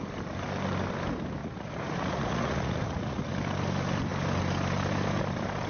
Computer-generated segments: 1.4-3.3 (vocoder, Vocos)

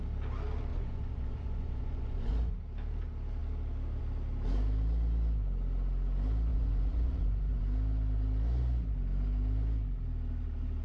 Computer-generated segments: 0.7-2.5 (vocoder, Vocos); 6.5-7.6

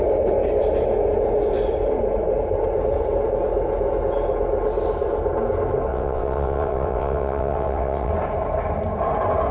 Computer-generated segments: 5.9-8.1 (vocoder, WaveNeXt)

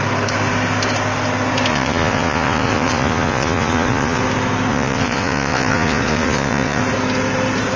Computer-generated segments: 1.7-4.2 (vocoder, Vocos); 4.7-6.8

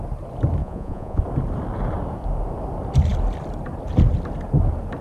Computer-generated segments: 0.6-1.2 (vocoder, Vocos)

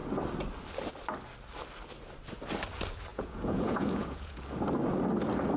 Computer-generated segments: 3.1-4.4 (vocoder, Vocos)